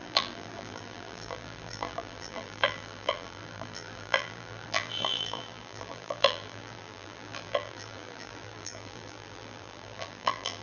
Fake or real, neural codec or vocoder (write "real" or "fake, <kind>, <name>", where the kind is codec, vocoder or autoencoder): fake, vocoder, BigVGAN v2